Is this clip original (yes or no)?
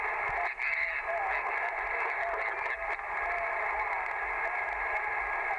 yes